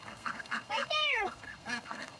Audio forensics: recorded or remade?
remade